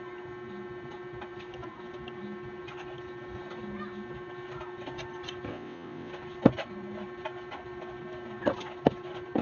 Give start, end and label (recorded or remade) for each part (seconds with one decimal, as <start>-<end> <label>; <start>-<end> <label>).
0.0-5.5 recorded; 5.5-6.1 remade; 6.1-9.4 recorded